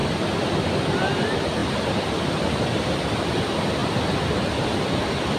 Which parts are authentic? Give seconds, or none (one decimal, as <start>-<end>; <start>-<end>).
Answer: 0.7-5.4